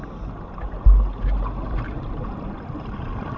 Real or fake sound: real